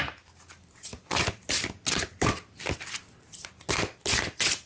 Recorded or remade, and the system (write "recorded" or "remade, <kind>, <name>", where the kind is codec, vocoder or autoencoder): recorded